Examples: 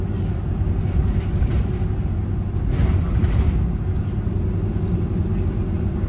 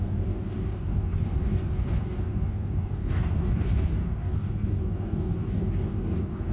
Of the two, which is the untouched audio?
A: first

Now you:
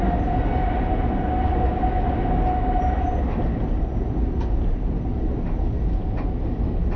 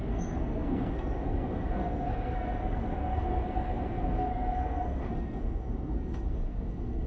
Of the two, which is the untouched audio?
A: first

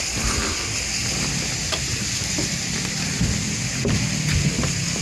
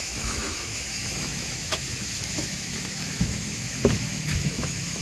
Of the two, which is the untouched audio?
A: first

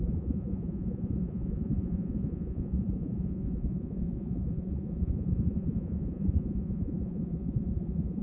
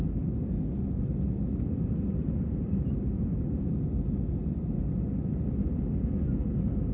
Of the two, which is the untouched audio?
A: second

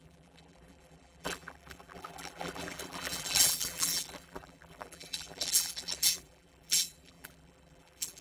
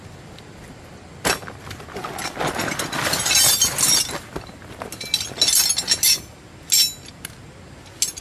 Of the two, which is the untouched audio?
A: second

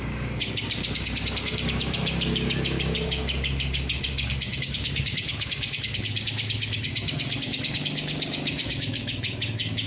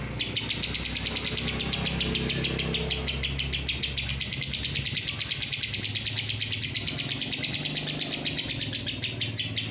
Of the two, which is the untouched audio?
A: second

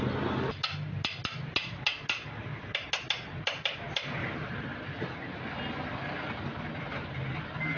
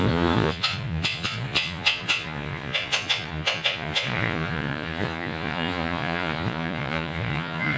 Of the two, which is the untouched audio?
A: first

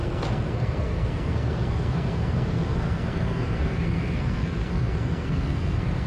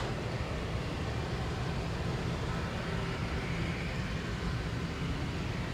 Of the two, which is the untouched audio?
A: second